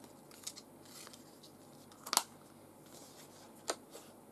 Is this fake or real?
real